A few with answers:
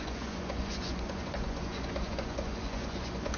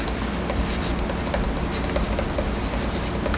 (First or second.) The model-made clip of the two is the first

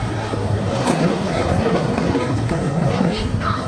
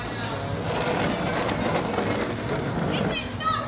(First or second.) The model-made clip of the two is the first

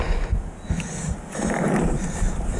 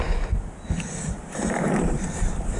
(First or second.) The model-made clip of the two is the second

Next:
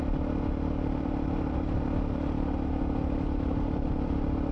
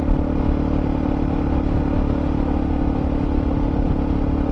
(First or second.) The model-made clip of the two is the first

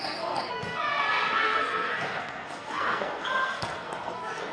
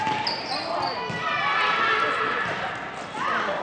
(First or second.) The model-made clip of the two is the first